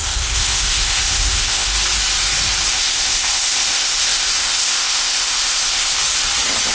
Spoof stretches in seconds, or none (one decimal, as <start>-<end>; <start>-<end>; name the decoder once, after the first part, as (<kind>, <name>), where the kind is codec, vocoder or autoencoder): 0.0-1.7 (codec, ZipCodec); 2.7-6.0